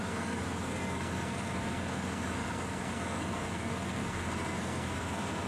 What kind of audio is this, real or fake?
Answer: fake